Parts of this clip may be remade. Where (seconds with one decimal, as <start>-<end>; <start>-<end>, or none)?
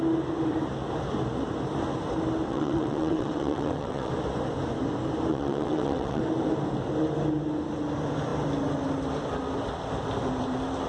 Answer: 2.5-4.1; 5.3-6.2